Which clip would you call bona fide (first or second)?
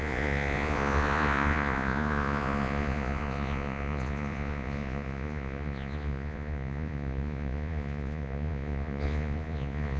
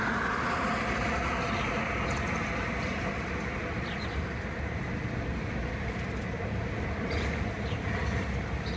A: second